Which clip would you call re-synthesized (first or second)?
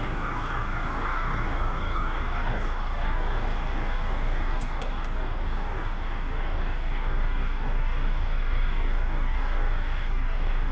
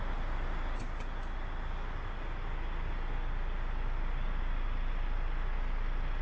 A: first